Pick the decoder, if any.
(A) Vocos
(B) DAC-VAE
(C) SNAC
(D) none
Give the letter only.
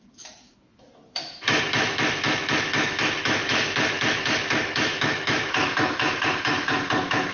B